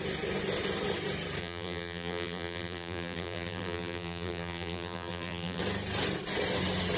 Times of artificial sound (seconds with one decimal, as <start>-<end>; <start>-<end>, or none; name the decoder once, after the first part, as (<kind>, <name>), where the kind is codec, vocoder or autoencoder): 1.4-5.6 (vocoder, BigVGAN v2)